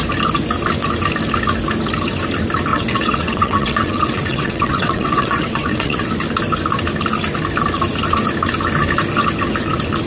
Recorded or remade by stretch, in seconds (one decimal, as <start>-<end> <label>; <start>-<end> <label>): 0.0-2.7 recorded; 2.7-6.1 remade; 6.1-10.1 recorded